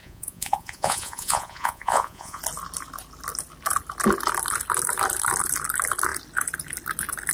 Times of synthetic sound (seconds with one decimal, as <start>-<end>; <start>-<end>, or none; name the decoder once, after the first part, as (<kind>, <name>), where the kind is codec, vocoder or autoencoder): 0.0-2.4 (vocoder, Vocos)